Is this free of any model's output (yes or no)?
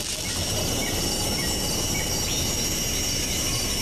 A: yes